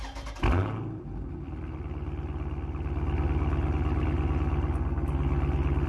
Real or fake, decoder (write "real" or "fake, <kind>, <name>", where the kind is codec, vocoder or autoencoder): real